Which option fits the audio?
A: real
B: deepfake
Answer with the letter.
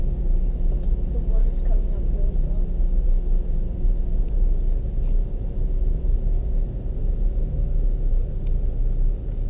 A